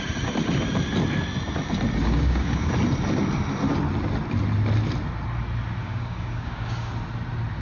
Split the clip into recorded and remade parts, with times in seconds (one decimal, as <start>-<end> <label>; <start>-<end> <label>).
0.0-2.0 recorded; 2.0-2.7 remade; 2.7-5.8 recorded; 5.8-6.9 remade; 6.9-7.6 recorded